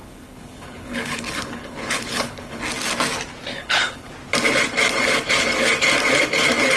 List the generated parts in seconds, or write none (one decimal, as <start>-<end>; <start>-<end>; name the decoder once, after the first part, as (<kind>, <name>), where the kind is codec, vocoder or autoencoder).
0.0-2.6 (codec, HILCodec); 3.5-4.1